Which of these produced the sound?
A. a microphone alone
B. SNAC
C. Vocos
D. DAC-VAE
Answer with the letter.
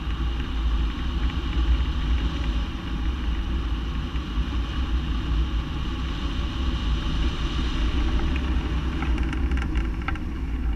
A